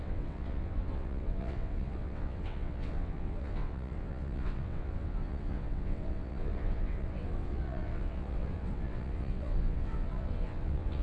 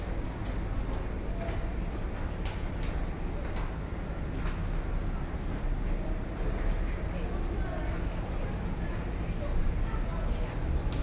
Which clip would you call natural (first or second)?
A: second